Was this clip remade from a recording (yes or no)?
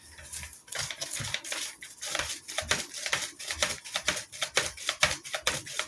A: no